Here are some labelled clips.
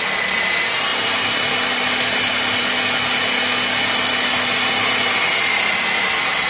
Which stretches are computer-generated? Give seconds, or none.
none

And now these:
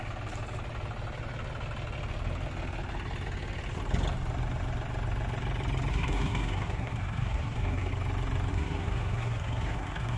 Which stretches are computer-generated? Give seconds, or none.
5.9-7.9 (codec, SNAC); 8.5-10.2